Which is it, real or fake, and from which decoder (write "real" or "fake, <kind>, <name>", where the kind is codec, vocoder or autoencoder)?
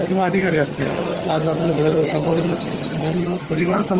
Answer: fake, vocoder, HiFi-GAN